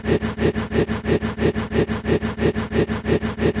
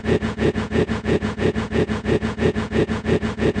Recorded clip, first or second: first